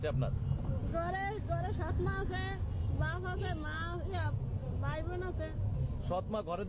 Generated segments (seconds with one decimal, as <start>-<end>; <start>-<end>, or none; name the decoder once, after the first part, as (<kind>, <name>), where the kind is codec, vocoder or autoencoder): none